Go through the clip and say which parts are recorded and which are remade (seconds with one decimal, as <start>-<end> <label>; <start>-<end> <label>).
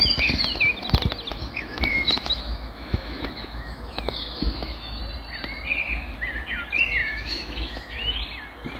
0.0-1.3 recorded; 1.3-5.0 remade; 5.0-7.0 recorded; 7.0-8.2 remade; 8.2-8.8 recorded